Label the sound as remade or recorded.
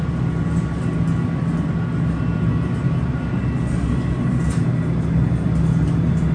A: recorded